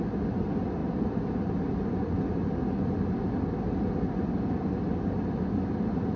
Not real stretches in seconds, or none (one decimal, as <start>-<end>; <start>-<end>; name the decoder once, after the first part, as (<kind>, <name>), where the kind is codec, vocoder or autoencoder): none